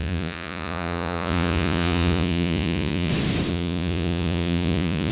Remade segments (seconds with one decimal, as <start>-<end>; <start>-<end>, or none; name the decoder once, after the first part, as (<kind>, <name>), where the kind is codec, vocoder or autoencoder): 0.0-3.1 (vocoder, Vocos); 3.5-5.1